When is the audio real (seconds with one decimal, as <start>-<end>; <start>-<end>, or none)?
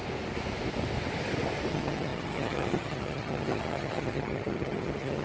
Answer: 0.0-1.7